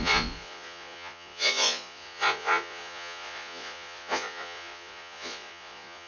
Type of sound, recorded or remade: remade